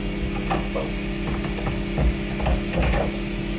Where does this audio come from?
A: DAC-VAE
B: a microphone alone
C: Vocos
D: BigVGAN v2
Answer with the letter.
B